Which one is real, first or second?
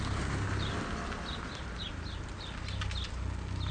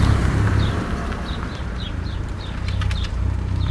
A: first